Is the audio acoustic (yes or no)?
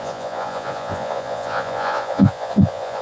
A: no